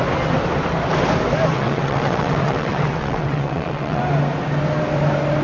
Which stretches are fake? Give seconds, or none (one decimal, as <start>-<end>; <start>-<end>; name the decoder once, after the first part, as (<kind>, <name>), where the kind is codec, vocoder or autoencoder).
1.5-4.0 (vocoder, WaveNeXt)